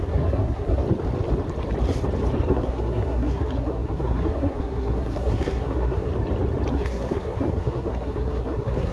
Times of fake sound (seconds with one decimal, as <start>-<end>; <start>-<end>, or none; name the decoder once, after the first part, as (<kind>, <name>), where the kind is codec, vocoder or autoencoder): 0.0-0.8 (codec, SNAC); 2.5-6.1; 6.7-8.9

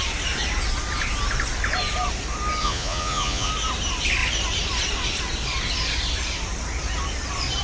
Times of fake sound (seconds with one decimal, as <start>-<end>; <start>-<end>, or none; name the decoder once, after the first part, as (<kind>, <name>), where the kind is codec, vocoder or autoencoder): 2.6-3.5 (vocoder, Vocos)

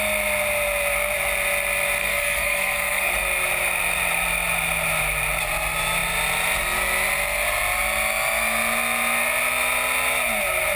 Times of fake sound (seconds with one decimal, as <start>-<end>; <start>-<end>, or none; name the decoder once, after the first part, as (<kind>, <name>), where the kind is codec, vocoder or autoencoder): 2.0-3.1 (codec, SNAC)

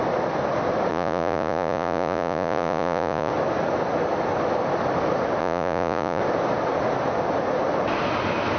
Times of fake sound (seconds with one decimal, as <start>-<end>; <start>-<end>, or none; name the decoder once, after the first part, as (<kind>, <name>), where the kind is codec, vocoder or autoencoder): 0.9-3.3 (vocoder, Vocos); 5.4-6.2

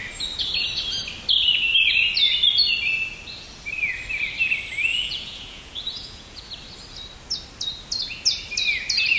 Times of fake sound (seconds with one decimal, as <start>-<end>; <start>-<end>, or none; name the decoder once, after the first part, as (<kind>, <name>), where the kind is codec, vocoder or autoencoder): 4.9-6.5 (vocoder, Vocos)

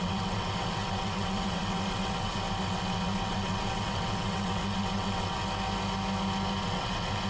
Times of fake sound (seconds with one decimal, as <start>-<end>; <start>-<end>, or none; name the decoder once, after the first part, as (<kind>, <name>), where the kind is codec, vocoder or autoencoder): 0.0-5.4 (vocoder, WaveNeXt); 6.6-7.3